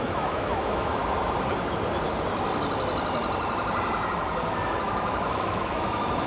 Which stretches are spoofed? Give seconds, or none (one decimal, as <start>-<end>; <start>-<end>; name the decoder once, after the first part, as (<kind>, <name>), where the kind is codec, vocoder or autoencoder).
0.0-1.0 (autoencoder, DAC-VAE); 4.8-6.3